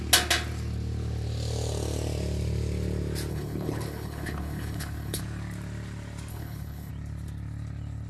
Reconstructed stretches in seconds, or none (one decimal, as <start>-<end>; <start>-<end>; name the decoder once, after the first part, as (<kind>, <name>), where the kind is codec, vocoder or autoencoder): 3.3-5.2 (codec, HILCodec); 6.3-6.9